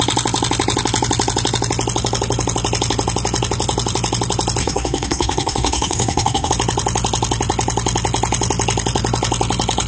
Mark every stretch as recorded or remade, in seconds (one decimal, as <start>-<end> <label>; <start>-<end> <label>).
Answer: 0.0-4.6 recorded; 4.6-6.5 remade; 6.5-9.9 recorded